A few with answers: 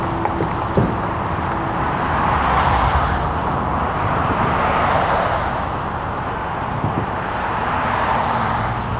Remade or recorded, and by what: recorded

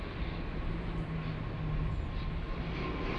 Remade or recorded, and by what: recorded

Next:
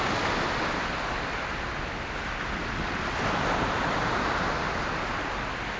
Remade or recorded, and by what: recorded